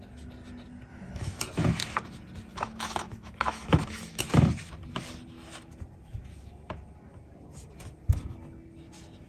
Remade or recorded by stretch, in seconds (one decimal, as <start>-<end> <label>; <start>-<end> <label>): 0.0-0.9 recorded; 0.9-1.4 remade; 1.4-2.5 recorded; 2.5-4.2 remade; 4.2-9.3 recorded